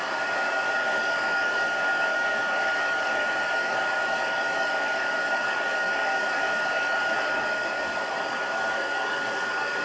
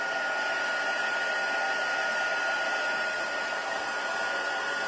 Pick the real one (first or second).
second